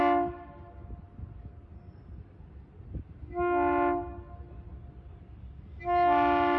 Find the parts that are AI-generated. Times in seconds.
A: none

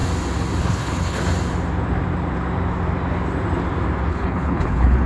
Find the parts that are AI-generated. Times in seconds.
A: 0.6-1.2 (codec, HILCodec); 4.1-5.1

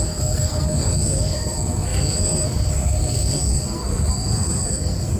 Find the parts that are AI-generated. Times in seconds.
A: 0.0-5.2 (codec, SNAC)

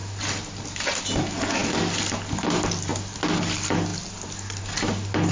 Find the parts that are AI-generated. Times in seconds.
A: none